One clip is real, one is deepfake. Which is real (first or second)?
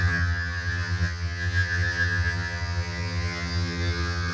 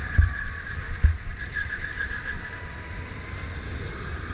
second